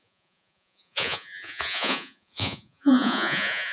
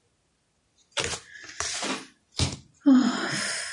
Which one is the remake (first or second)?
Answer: first